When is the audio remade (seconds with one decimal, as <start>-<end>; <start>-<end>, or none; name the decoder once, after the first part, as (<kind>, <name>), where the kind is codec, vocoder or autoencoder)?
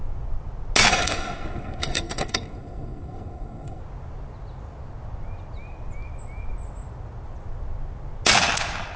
0.9-3.8 (codec, SNAC)